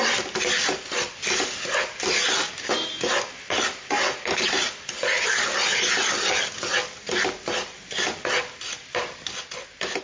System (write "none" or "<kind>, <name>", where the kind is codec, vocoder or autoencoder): none